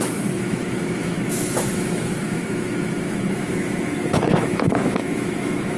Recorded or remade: remade